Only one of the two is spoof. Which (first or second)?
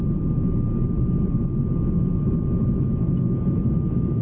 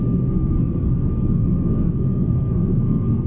second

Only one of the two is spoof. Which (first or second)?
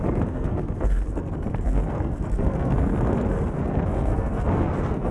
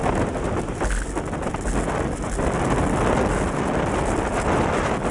first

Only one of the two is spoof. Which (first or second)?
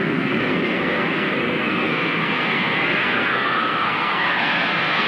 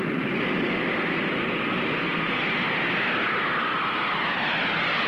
first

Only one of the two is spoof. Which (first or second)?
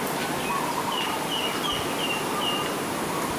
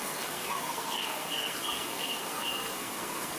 second